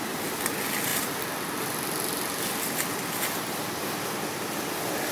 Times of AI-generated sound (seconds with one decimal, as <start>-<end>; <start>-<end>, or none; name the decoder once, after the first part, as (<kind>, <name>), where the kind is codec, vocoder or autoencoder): none